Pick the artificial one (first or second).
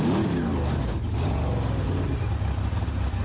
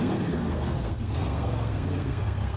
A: second